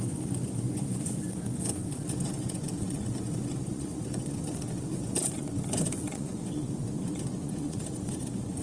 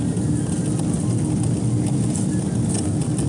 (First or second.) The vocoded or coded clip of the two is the first